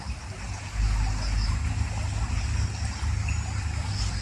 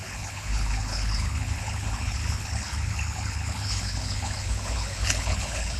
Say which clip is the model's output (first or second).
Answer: second